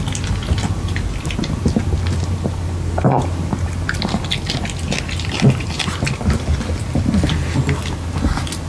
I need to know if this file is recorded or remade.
recorded